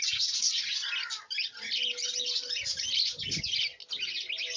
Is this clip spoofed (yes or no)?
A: no